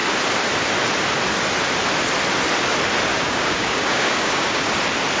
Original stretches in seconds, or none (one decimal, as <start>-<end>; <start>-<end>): 0.0-3.1; 4.7-5.2